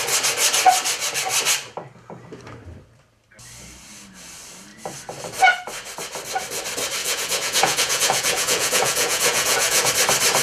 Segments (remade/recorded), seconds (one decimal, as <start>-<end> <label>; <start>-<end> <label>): 0.0-7.0 recorded; 7.0-9.9 remade; 9.9-10.4 recorded